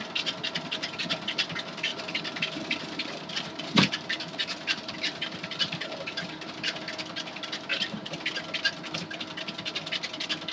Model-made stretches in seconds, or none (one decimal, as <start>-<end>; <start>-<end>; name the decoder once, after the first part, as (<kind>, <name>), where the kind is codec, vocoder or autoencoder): 1.9-6.8 (vocoder, BigVGAN v2); 7.7-8.2